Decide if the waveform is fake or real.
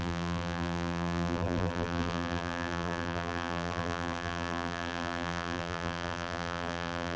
fake